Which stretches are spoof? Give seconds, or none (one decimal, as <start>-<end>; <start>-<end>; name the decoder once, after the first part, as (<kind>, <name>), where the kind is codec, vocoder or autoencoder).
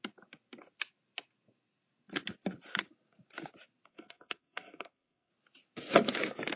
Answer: 3.9-5.3 (codec, SNAC)